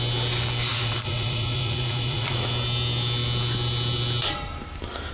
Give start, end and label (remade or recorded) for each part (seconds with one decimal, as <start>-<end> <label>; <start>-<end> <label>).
0.0-0.7 recorded; 0.7-2.5 remade; 2.5-5.1 recorded